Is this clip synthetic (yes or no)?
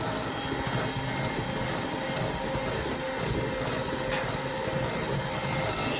no